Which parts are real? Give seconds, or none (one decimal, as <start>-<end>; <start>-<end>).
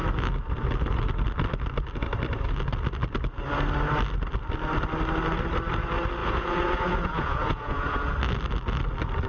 0.0-6.2; 8.1-9.3